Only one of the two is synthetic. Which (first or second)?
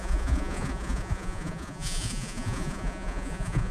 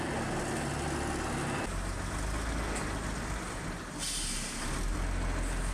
first